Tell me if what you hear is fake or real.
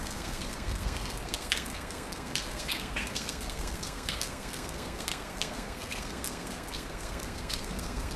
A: fake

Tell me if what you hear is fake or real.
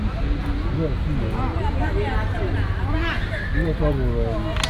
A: real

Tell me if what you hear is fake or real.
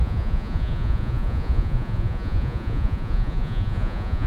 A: fake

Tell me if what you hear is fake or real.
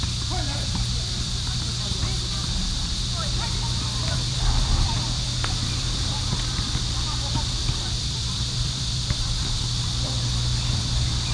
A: fake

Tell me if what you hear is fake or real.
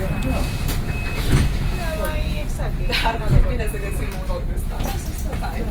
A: real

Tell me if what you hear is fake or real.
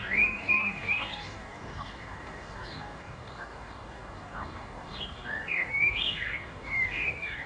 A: fake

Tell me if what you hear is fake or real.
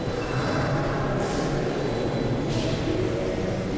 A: fake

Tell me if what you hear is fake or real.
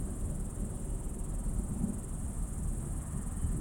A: real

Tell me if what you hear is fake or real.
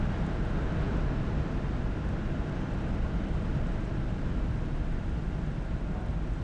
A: real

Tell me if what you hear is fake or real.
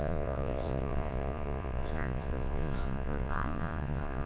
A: fake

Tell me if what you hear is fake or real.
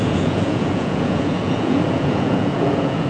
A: fake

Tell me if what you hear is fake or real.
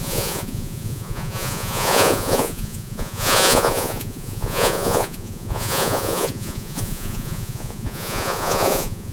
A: fake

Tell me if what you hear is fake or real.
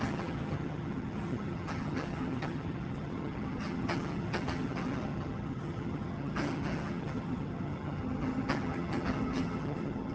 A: fake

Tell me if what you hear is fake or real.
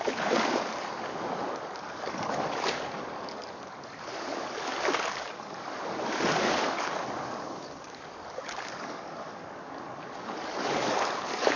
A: fake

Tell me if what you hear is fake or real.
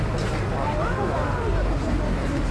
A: real